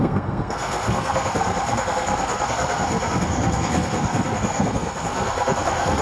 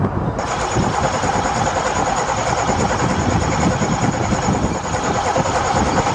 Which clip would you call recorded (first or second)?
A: second